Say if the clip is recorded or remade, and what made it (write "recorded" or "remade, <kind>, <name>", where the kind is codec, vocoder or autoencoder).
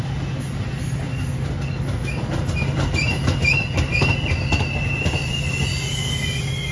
recorded